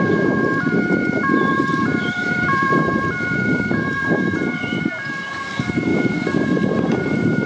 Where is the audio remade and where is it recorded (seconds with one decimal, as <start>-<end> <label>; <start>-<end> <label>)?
0.0-7.5 recorded